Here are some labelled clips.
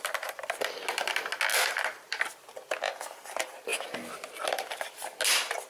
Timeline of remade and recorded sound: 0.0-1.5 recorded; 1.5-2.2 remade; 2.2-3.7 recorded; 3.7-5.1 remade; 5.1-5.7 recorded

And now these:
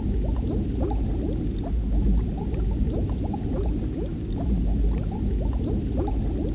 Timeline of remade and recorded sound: 0.0-6.5 recorded